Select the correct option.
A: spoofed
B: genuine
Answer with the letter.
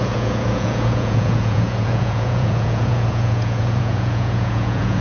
A